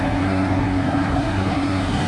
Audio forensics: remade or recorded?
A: remade